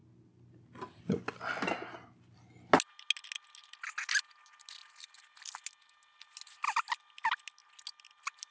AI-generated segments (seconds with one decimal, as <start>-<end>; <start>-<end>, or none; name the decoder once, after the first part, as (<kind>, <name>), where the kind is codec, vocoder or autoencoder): none